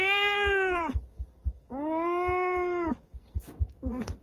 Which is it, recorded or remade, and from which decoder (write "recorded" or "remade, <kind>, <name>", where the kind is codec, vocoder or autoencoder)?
remade, codec, SNAC